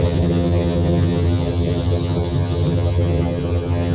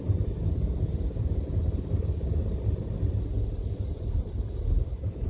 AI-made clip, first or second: first